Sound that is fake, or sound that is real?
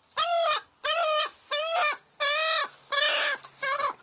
real